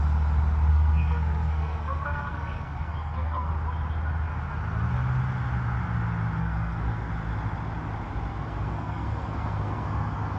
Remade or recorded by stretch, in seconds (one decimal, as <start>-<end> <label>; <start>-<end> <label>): 0.0-0.7 recorded; 0.7-3.5 remade; 3.5-6.4 recorded; 6.4-7.1 remade; 7.1-8.3 recorded; 8.3-10.4 remade